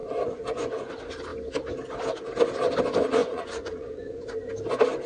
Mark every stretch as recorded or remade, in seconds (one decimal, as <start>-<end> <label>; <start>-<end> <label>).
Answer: 0.0-0.9 remade; 0.9-3.2 recorded; 3.2-4.5 remade; 4.5-5.1 recorded